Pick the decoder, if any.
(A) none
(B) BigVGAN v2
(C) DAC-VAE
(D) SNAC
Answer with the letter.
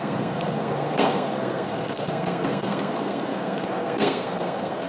D